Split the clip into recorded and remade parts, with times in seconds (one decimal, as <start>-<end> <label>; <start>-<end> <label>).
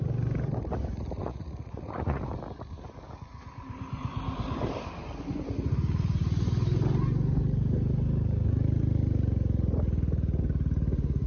0.0-1.2 recorded; 1.2-2.2 remade; 2.2-11.3 recorded